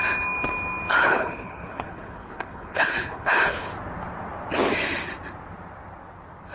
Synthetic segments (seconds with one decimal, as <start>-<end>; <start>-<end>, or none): 1.0-3.7